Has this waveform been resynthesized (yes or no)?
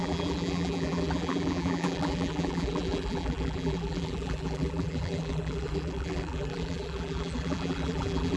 yes